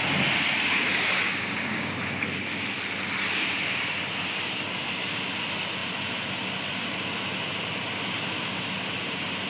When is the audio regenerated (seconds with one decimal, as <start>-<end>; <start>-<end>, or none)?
1.2-1.9